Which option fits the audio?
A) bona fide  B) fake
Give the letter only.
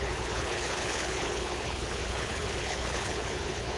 B